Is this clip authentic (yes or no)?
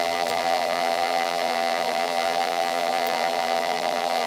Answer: no